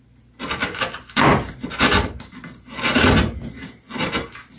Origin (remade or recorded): recorded